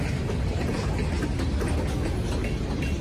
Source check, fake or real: real